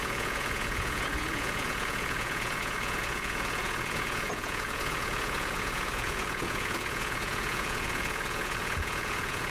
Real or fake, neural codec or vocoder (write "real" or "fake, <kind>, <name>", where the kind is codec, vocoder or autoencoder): fake, vocoder, Vocos